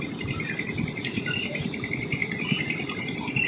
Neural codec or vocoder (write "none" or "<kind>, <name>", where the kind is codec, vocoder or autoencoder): vocoder, BigVGAN v2